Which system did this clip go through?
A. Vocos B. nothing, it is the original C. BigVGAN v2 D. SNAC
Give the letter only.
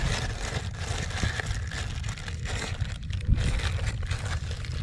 B